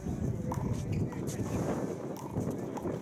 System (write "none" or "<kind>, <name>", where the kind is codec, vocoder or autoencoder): none